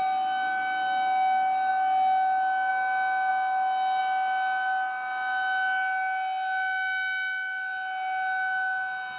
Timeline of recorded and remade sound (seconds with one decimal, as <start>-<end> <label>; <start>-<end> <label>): 0.0-9.2 recorded